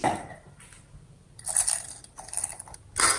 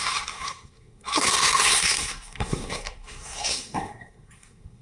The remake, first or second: second